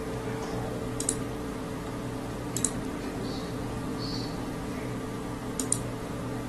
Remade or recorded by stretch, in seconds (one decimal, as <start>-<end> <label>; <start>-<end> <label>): 0.0-6.5 recorded